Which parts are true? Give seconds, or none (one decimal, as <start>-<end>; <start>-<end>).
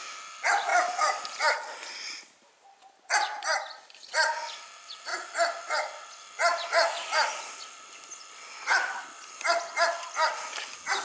0.0-11.0